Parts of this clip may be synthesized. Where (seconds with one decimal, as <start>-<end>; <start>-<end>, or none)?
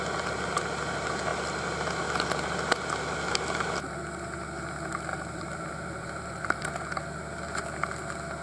5.1-6.7